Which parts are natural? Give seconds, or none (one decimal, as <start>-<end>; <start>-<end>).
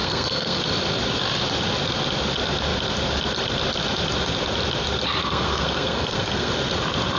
0.6-5.2; 6.5-7.2